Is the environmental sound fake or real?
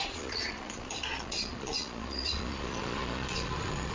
fake